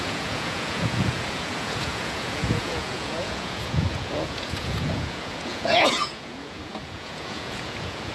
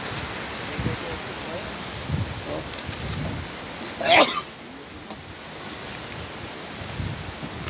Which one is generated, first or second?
first